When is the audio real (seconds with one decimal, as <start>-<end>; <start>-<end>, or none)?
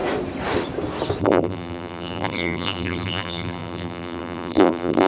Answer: 0.0-1.2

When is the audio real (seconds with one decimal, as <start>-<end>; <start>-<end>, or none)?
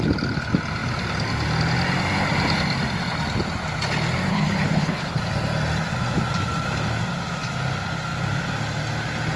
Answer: 0.0-4.3; 5.2-9.4